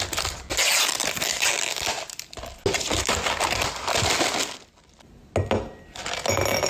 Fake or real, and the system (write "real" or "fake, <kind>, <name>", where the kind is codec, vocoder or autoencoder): real